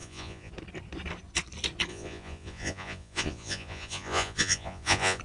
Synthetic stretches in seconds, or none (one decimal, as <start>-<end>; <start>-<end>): 0.0-0.5; 1.9-5.2